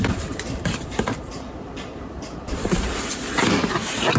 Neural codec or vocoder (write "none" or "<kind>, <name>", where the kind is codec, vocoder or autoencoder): vocoder, BigVGAN v2